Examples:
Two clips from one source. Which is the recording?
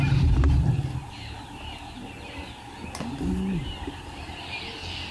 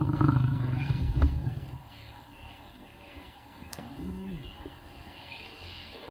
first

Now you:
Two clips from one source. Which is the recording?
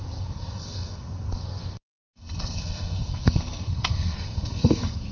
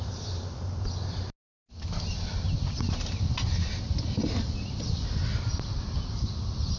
second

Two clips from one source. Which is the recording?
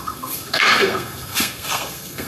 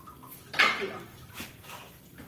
second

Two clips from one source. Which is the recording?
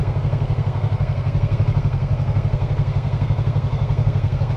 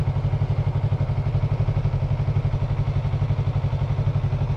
second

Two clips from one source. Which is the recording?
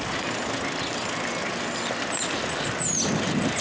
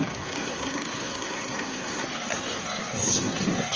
first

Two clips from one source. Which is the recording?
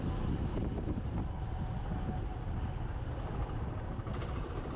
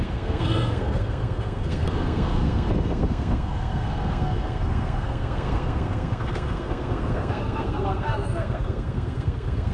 first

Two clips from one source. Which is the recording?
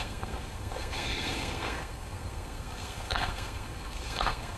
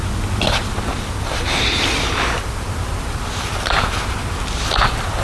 second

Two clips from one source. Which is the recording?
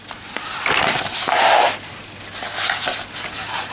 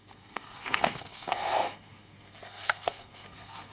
first